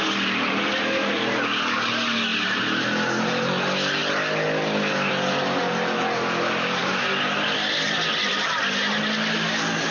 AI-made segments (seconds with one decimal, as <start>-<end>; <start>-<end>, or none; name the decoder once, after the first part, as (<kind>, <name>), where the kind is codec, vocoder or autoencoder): none

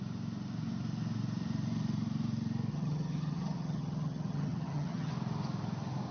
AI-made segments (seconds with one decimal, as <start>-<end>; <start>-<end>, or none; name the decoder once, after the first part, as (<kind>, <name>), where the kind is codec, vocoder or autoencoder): 2.7-5.1 (vocoder, HiFi-GAN)

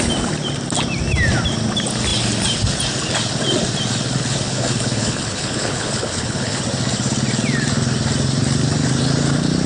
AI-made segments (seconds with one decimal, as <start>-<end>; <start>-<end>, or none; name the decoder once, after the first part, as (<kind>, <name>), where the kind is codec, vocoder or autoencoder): 4.1-6.6 (codec, HILCodec)

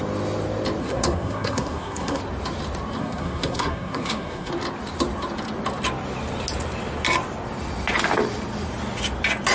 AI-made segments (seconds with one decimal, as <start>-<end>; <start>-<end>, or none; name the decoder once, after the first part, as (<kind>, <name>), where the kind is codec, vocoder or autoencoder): 0.8-2.2 (codec, SNAC); 3.0-4.5

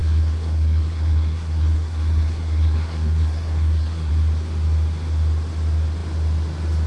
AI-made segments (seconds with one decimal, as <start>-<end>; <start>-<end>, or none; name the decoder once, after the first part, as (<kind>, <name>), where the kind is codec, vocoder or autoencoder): 0.0-4.1 (codec, SNAC)